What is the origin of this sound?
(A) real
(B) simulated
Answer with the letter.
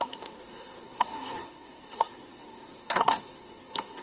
B